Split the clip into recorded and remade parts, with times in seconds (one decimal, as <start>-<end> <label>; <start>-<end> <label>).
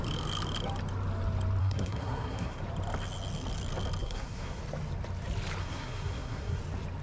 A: 0.0-1.6 recorded; 1.6-2.6 remade; 2.6-4.0 recorded; 4.0-4.6 remade; 4.6-5.6 recorded; 5.6-6.6 remade; 6.6-7.0 recorded